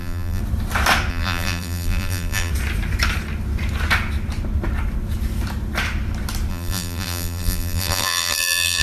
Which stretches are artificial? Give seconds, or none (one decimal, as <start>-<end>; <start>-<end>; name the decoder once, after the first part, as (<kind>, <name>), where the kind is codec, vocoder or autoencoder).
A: 0.0-0.4 (vocoder, BigVGAN v2); 1.1-2.5; 6.5-8.8